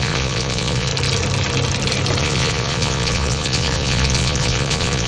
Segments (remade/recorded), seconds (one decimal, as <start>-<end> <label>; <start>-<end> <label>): 0.0-0.9 remade; 0.9-2.2 recorded; 2.2-5.1 remade